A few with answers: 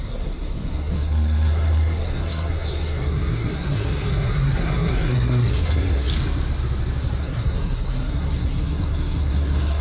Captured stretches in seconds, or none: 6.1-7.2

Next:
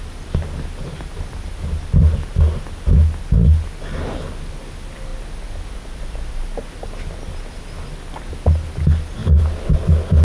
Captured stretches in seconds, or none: 0.0-10.2

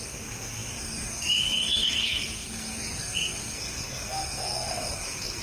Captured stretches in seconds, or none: none

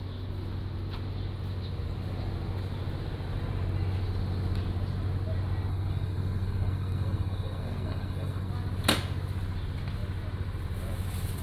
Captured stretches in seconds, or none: 0.0-5.7; 8.5-11.4

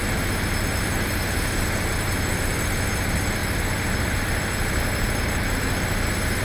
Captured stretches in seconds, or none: 0.0-6.4